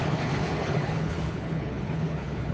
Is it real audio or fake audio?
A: fake